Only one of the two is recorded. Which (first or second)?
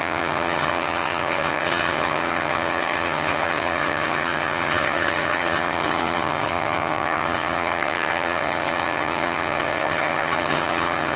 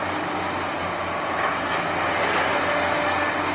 second